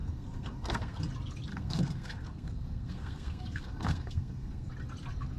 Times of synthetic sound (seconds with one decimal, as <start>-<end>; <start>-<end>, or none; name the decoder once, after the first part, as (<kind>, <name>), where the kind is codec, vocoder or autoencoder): 0.0-1.0 (codec, SNAC); 1.5-4.7